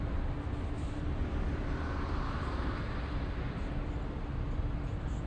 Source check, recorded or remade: recorded